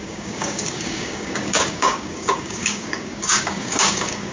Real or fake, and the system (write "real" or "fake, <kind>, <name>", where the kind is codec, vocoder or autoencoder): fake, codec, DAC